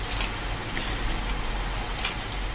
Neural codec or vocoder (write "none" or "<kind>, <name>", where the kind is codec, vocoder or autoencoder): none